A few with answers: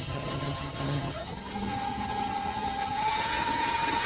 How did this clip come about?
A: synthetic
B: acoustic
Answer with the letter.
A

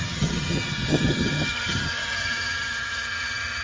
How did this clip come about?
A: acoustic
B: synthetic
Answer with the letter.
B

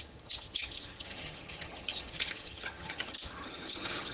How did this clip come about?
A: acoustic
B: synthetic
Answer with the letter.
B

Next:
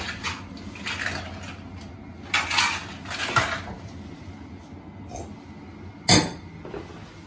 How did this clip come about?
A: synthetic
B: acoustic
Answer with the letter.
B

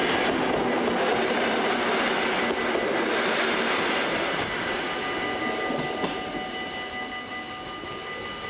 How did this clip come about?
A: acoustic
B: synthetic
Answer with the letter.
A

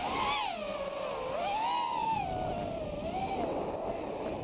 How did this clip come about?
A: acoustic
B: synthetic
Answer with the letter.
A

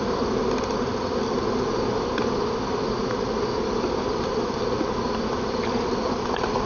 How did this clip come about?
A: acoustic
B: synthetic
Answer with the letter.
A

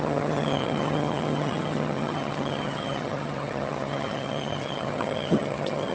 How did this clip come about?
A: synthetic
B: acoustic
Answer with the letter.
A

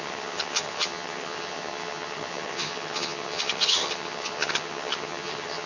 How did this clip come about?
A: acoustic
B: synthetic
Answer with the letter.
B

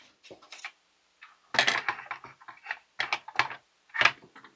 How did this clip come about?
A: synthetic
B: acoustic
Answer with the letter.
B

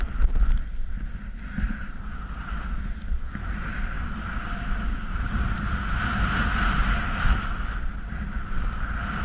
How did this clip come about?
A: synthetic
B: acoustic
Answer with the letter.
B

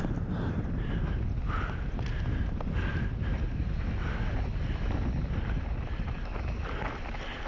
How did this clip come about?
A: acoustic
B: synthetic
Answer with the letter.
A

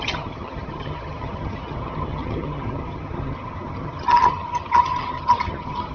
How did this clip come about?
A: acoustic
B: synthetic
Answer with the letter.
B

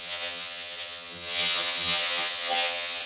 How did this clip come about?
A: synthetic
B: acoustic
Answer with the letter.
A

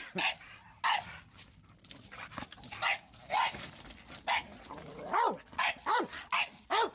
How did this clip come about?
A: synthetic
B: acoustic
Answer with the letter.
B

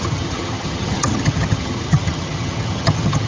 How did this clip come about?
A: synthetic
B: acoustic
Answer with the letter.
A